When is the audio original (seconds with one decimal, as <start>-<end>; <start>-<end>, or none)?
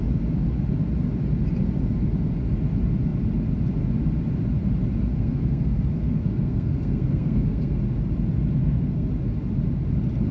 0.0-5.1; 7.8-8.6; 9.1-10.3